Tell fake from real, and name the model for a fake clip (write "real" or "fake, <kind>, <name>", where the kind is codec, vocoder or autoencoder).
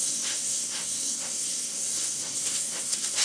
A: fake, codec, SNAC